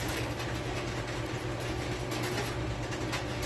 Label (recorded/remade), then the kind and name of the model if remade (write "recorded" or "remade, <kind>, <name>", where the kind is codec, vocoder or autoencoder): recorded